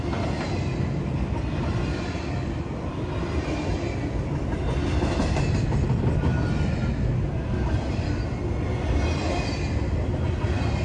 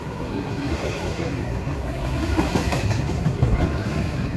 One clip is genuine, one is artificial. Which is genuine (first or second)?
first